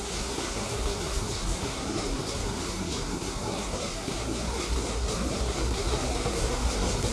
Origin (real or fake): fake